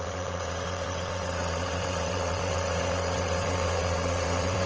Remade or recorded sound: remade